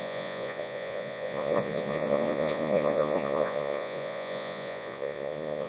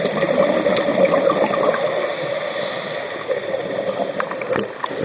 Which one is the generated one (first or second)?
first